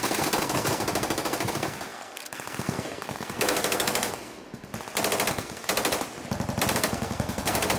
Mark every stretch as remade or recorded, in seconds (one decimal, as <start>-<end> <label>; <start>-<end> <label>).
0.0-4.7 remade; 4.7-5.3 recorded; 5.3-5.7 remade; 5.7-6.7 recorded; 6.7-7.8 remade